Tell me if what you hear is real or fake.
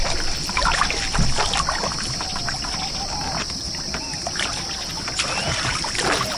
real